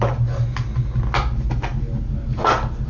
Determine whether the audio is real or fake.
real